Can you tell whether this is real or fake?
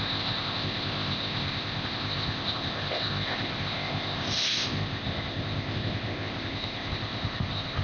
fake